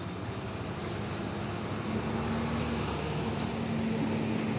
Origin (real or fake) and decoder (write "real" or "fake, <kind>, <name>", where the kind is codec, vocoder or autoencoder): real